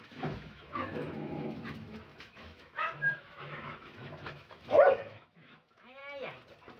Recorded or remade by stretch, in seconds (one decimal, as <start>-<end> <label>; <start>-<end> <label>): 0.0-6.0 remade; 6.0-6.8 recorded